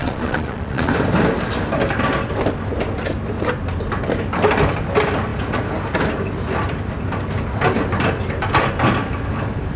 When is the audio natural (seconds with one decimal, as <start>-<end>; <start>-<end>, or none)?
0.9-9.8